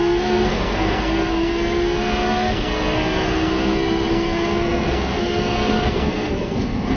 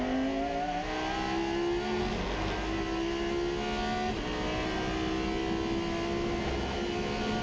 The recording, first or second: second